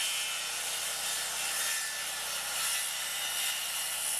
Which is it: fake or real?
real